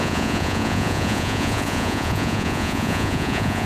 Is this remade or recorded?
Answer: remade